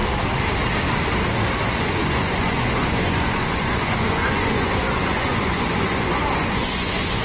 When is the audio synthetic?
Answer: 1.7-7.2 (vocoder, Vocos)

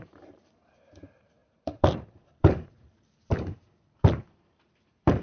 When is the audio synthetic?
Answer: 0.0-5.2 (vocoder, BigVGAN v2)

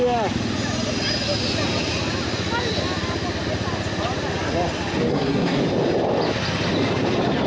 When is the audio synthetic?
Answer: 5.1-5.6 (codec, SNAC)

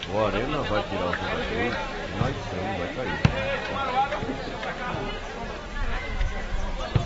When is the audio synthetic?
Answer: 5.9-6.5 (autoencoder, DAC-VAE)